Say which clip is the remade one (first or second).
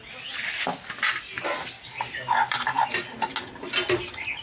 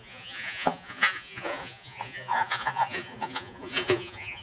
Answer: second